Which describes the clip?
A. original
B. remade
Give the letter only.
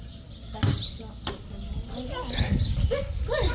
A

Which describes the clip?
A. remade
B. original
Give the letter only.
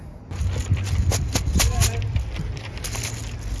B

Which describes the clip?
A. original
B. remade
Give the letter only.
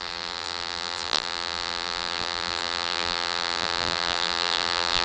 B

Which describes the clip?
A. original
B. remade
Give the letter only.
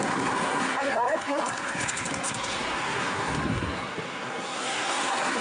B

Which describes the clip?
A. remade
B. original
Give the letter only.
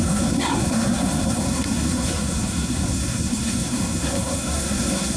A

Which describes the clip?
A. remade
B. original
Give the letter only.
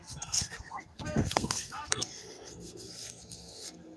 A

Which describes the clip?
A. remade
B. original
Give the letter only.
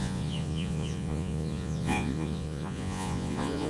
A